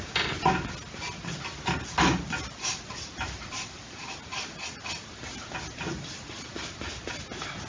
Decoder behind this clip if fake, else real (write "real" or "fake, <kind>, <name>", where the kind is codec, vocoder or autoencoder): real